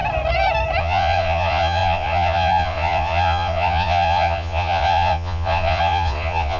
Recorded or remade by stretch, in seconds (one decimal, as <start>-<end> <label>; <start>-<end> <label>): 0.0-0.8 recorded; 0.8-6.6 remade